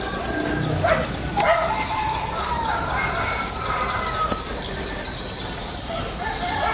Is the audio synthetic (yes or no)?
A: no